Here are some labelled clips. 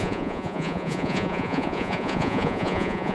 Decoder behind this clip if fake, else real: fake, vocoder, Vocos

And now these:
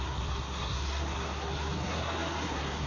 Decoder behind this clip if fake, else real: fake, codec, SNAC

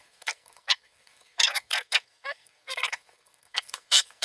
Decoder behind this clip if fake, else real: fake, codec, SNAC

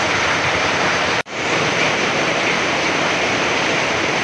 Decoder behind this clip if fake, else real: fake, vocoder, BigVGAN v2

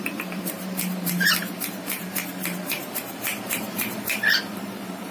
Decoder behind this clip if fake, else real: fake, vocoder, BigVGAN v2